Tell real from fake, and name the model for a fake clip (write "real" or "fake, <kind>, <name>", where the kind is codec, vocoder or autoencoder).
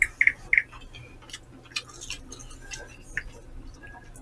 real